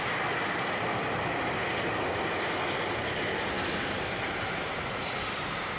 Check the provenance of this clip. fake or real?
real